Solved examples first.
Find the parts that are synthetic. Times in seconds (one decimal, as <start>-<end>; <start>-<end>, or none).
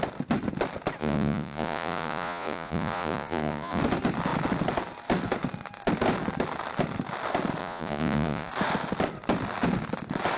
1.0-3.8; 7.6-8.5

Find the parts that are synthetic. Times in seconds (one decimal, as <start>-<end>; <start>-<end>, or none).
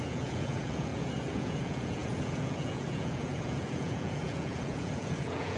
0.0-5.6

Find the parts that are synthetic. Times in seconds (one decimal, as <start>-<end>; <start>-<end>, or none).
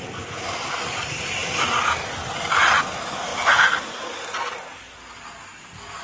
none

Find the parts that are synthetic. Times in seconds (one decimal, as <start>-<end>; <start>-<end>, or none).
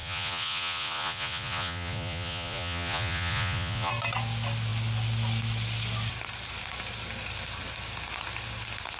0.0-3.9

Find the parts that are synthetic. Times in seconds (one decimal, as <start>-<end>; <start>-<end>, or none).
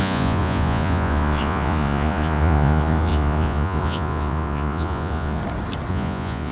0.0-5.4; 5.9-6.5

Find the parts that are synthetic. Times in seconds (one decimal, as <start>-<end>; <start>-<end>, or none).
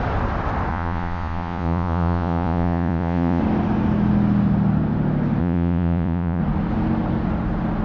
0.7-3.4; 5.4-6.4